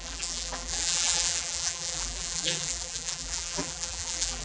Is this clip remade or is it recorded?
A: remade